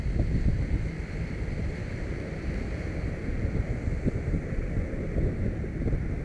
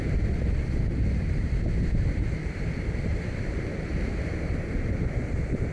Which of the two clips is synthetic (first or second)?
second